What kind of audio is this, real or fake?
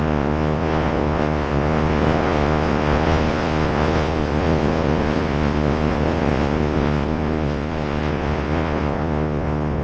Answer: fake